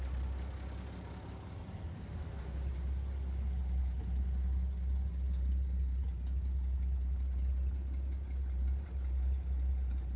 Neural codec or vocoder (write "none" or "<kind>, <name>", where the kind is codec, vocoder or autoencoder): none